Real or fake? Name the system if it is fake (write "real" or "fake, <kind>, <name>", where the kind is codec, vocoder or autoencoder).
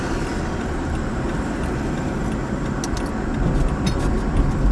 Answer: real